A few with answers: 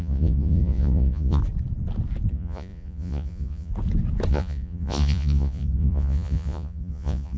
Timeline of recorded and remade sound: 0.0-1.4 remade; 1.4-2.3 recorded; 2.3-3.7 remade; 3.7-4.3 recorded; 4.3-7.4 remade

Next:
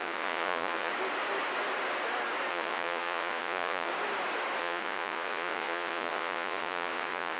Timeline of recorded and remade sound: 0.0-0.9 remade; 0.9-2.5 recorded; 2.5-3.9 remade; 3.9-4.6 recorded; 4.6-7.4 remade

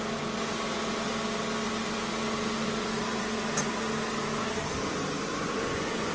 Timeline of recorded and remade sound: 0.0-5.3 recorded; 5.3-6.1 remade

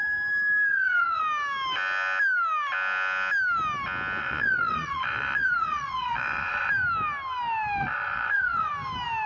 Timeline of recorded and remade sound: 0.0-0.7 recorded; 0.7-1.2 remade; 1.2-4.2 recorded; 4.2-6.7 remade; 6.7-7.8 recorded; 7.8-8.7 remade; 8.7-9.3 recorded